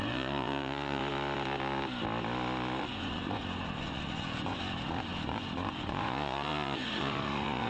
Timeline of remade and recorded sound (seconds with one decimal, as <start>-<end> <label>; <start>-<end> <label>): 0.0-1.0 remade; 1.0-2.8 recorded; 2.8-7.7 remade